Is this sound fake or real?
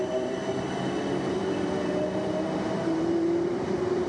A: fake